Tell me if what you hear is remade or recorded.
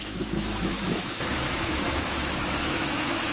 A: remade